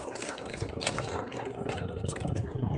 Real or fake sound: fake